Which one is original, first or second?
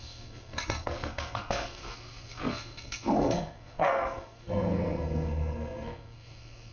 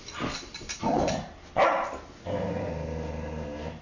second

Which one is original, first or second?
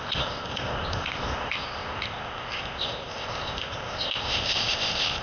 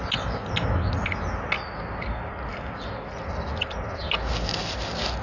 second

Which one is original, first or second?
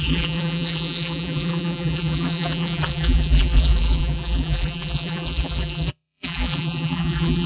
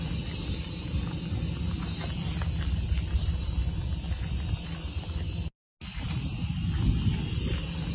second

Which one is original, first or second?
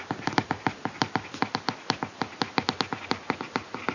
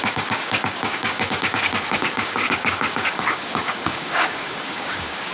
first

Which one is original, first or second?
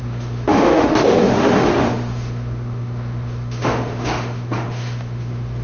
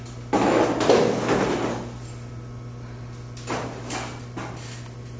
second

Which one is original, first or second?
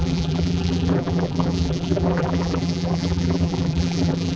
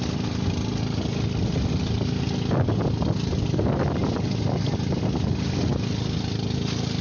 second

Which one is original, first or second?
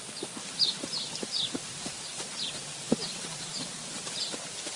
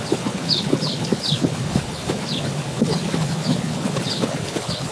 first